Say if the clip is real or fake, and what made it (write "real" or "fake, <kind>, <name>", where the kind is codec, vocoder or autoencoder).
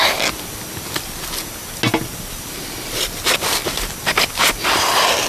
real